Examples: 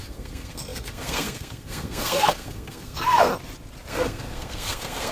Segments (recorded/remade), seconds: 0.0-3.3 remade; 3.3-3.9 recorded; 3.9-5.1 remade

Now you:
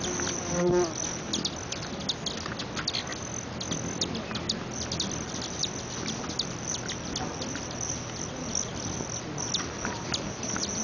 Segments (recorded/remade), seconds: 0.0-10.8 recorded

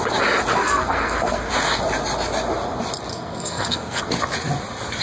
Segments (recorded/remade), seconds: 0.0-0.6 recorded; 0.6-1.5 remade; 1.5-3.1 recorded; 3.1-4.0 remade; 4.0-5.0 recorded

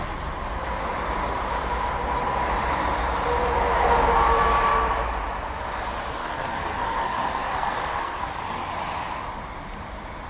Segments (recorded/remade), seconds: 0.0-6.2 recorded; 6.2-8.7 remade; 8.7-10.3 recorded

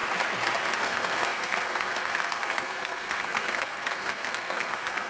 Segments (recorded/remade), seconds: 0.0-0.8 recorded; 0.8-5.1 remade

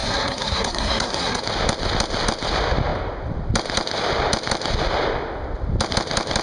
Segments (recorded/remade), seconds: 0.0-1.4 remade; 1.4-6.4 recorded

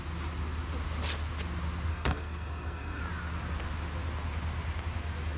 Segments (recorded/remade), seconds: 0.0-1.9 recorded; 1.9-3.0 remade; 3.0-5.4 recorded